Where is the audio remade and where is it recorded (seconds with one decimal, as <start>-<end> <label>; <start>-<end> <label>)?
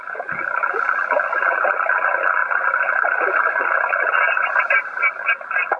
0.0-2.4 recorded; 2.4-5.0 remade; 5.0-5.8 recorded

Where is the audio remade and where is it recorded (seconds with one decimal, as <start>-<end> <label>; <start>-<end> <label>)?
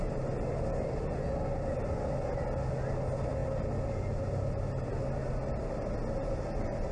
0.0-6.9 recorded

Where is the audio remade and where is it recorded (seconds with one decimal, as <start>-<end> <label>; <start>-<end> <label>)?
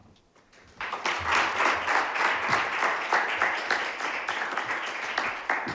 0.0-0.9 remade; 0.9-5.7 recorded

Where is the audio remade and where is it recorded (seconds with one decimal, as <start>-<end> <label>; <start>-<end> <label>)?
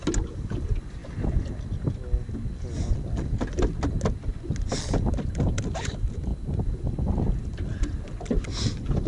0.0-9.1 recorded